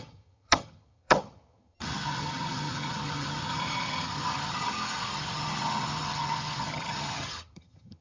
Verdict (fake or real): fake